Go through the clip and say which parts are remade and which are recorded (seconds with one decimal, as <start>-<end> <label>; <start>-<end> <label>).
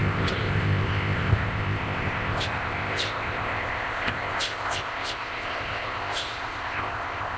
0.0-7.4 remade